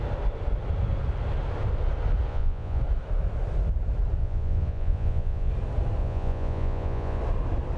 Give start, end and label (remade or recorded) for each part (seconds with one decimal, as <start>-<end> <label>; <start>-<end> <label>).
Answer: 0.0-2.3 recorded; 2.3-2.8 remade; 2.8-4.2 recorded; 4.2-5.5 remade; 5.5-6.0 recorded; 6.0-7.2 remade; 7.2-7.8 recorded